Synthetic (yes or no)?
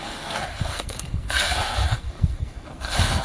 yes